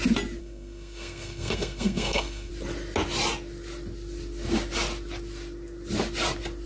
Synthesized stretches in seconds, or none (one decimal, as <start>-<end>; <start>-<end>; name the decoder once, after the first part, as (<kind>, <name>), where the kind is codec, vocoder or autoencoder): 0.4-2.5 (codec, SNAC)

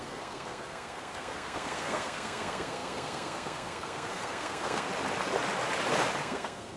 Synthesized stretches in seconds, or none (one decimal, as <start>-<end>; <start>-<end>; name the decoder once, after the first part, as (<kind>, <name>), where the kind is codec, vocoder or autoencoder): 0.0-4.9 (codec, SNAC); 6.2-6.8

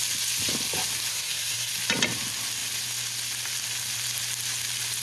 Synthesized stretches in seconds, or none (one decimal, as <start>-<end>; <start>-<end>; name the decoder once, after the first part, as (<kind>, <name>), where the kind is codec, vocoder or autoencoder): 1.1-1.7 (codec, SNAC)

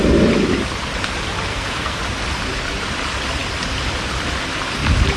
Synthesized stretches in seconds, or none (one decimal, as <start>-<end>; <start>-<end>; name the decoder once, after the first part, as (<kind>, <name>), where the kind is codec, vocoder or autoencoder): 1.5-2.0 (codec, SNAC)

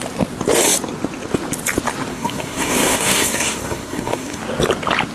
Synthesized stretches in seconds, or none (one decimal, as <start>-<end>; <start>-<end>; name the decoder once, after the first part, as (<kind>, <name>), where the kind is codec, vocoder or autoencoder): 2.1-4.4 (codec, SNAC)

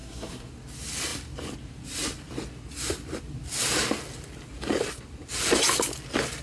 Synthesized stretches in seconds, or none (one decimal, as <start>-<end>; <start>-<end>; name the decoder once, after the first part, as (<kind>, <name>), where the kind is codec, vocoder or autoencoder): 0.0-0.5 (codec, SNAC)